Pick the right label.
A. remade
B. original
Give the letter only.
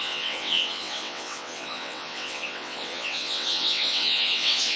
A